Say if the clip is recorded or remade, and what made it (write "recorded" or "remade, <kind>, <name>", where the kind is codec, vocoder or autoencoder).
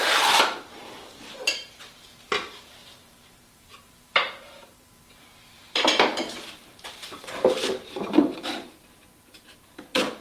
remade, vocoder, BigVGAN v2